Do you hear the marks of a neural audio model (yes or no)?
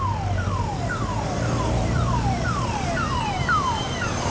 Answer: yes